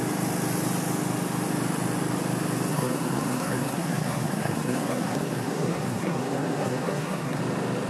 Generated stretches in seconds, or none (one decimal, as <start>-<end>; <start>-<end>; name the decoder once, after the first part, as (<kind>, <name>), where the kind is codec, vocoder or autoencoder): 2.7-7.4 (codec, SNAC)